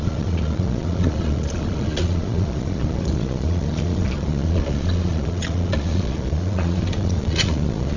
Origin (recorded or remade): remade